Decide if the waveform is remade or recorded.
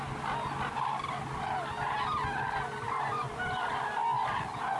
recorded